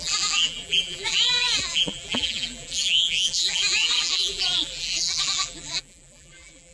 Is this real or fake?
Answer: fake